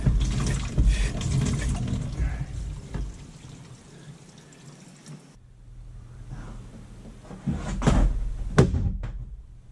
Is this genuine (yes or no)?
yes